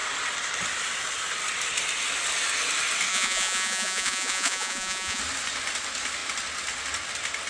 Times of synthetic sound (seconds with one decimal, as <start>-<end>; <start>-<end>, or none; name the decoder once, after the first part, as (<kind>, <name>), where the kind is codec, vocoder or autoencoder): 3.1-5.2 (vocoder, Vocos)